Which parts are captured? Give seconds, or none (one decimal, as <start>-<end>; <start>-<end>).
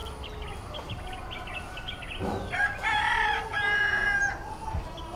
0.0-3.5; 4.3-5.2